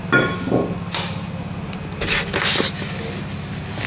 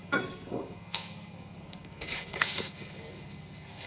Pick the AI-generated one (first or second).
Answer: second